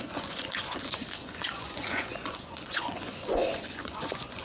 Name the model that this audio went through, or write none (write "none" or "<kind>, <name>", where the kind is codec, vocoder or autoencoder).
vocoder, Vocos